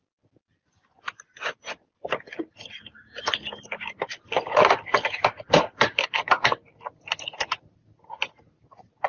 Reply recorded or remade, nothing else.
recorded